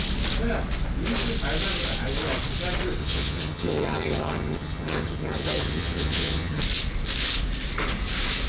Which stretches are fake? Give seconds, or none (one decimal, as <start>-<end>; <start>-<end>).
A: 3.0-6.6

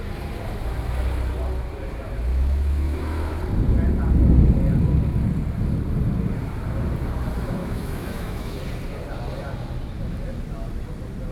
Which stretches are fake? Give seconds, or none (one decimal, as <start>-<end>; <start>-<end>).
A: 2.3-3.4; 7.6-8.6